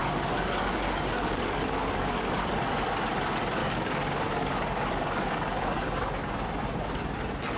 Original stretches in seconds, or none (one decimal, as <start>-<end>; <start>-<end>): 2.5-3.6; 6.1-7.6